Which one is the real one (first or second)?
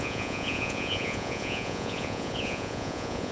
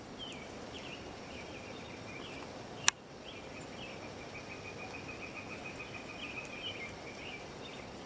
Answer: second